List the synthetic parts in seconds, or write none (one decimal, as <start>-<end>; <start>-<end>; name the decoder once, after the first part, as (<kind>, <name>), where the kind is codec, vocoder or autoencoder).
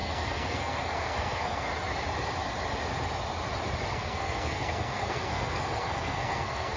0.0-1.7 (codec, SNAC); 3.9-6.8